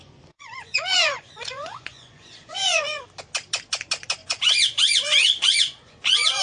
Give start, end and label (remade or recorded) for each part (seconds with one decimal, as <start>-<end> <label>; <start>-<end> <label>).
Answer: 0.0-3.0 remade; 3.0-4.2 recorded; 4.2-6.4 remade